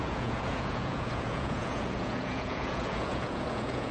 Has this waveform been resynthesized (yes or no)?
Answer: yes